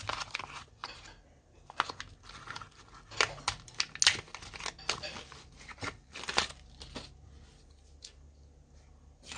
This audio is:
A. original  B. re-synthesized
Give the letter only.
A